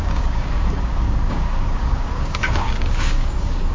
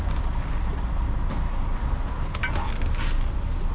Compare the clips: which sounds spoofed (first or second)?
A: first